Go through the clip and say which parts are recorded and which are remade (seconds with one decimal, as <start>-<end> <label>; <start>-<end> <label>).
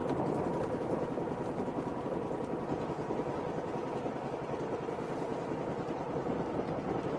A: 0.0-5.3 remade; 5.3-6.5 recorded; 6.5-7.2 remade